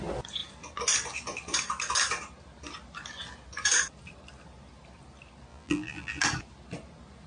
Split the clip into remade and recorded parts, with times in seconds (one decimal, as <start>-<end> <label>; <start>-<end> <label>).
0.0-5.5 recorded; 5.5-6.2 remade; 6.2-7.3 recorded